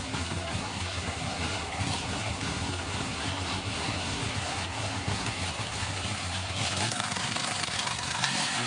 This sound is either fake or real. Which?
fake